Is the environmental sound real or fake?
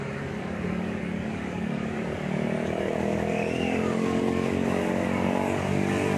fake